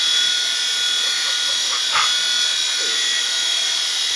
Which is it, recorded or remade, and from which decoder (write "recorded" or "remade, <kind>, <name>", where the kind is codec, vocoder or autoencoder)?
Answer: recorded